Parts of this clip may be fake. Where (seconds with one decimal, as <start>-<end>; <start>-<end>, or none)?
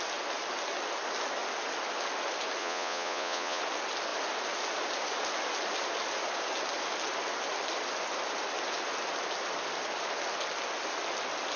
2.6-3.6